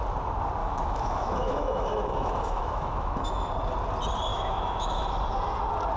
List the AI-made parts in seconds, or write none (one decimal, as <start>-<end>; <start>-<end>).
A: 0.6-3.5; 4.3-5.1